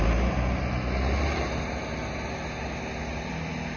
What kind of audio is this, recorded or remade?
recorded